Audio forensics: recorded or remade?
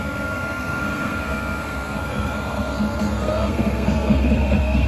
remade